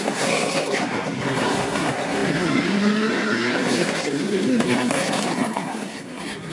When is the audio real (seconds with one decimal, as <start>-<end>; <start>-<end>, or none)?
none